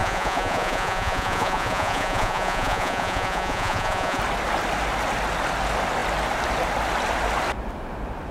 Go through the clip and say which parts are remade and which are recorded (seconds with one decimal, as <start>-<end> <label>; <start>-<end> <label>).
0.0-4.2 remade; 4.2-8.3 recorded